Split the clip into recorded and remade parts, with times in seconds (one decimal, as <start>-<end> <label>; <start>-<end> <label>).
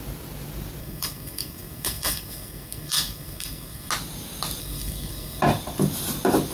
0.0-0.8 recorded; 0.8-3.9 remade; 3.9-4.6 recorded; 4.6-5.4 remade; 5.4-6.5 recorded